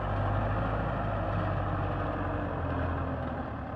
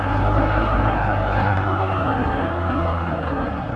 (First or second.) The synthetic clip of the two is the second